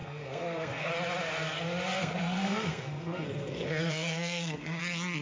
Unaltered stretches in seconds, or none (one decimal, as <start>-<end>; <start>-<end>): 0.9-2.0; 4.8-5.2